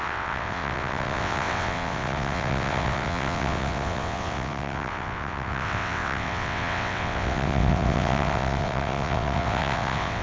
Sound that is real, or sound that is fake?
fake